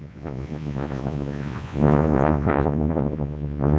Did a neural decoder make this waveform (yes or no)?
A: yes